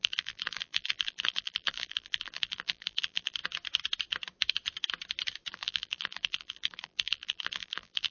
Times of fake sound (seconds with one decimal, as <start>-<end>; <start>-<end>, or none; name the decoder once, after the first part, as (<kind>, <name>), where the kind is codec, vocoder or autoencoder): 0.0-3.4 (vocoder, BigVGAN v2); 5.5-8.1